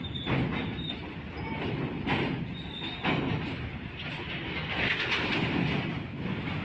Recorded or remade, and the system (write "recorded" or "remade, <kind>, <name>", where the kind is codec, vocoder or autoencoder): recorded